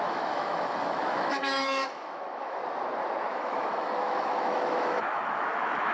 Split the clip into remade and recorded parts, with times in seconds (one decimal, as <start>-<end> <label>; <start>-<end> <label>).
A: 0.0-2.6 remade; 2.6-3.3 recorded; 3.3-5.9 remade